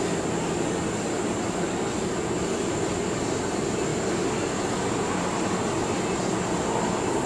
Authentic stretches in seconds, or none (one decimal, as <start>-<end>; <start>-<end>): 0.0-7.3